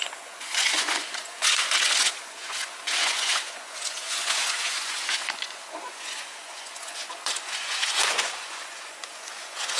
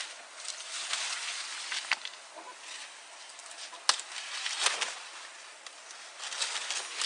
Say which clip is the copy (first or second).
first